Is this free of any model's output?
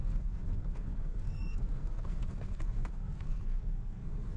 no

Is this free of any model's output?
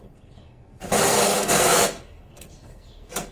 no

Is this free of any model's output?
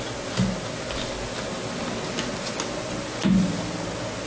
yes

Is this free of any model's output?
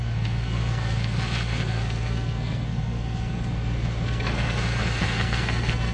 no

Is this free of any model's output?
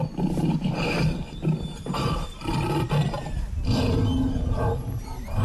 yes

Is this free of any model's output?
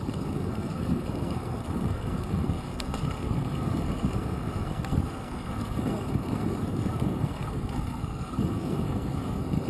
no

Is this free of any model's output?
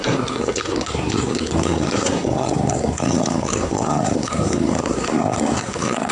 no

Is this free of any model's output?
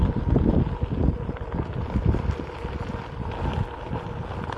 yes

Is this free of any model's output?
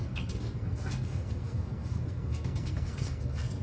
no